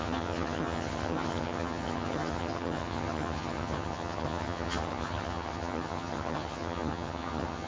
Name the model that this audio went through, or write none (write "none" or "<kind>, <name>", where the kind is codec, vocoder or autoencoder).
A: vocoder, HiFi-GAN